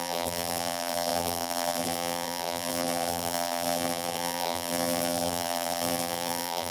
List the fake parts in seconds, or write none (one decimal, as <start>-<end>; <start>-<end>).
0.0-6.7